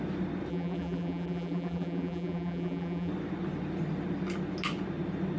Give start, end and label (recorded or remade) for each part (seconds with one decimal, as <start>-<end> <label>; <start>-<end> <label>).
0.0-0.5 recorded; 0.5-3.1 remade; 3.1-5.4 recorded